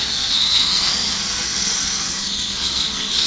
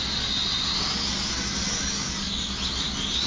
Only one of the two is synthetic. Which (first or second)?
first